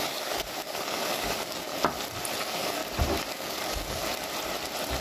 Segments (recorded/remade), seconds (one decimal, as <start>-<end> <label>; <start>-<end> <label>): 0.0-1.7 remade; 1.7-2.4 recorded; 2.4-2.8 remade; 2.8-3.3 recorded; 3.3-4.0 remade; 4.0-5.0 recorded